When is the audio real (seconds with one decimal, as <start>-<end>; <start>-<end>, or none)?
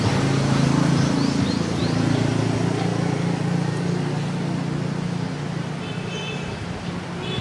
0.0-7.4